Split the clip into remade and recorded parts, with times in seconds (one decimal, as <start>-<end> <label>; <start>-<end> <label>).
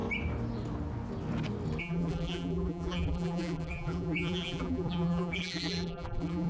0.0-1.8 recorded; 1.8-6.5 remade